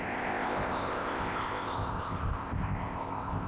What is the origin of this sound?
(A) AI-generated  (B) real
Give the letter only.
A